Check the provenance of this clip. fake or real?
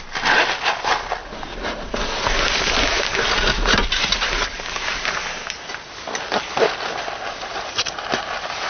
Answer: real